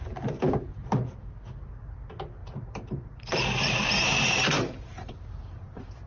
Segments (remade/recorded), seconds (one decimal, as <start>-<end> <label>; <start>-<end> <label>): 0.0-2.4 recorded; 2.4-6.1 remade